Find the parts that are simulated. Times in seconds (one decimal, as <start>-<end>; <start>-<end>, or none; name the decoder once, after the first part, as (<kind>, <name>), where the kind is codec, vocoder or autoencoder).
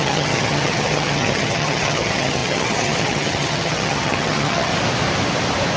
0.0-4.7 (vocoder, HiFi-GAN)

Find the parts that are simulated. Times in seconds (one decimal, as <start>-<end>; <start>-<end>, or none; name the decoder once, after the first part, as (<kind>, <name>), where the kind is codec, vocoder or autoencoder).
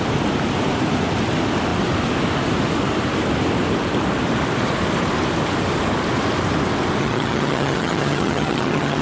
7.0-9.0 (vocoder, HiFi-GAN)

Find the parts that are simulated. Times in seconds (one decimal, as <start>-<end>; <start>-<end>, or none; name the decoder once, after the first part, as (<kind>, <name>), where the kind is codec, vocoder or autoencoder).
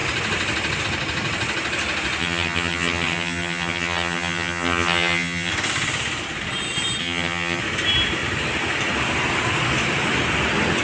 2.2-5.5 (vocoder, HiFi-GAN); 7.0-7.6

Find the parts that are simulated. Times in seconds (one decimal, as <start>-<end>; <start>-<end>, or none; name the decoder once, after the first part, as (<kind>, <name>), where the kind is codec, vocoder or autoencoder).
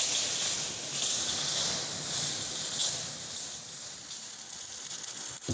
none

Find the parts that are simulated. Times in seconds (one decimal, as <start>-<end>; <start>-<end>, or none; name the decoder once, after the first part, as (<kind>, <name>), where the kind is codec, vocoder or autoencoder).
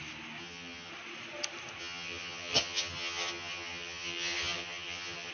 0.4-0.9 (vocoder, HiFi-GAN); 1.8-5.3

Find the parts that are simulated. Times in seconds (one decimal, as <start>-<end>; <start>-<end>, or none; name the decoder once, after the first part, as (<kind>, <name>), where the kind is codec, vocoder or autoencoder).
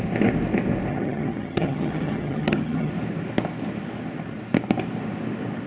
0.9-2.9 (vocoder, HiFi-GAN)